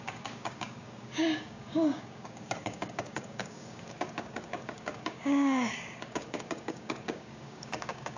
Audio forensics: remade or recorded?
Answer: remade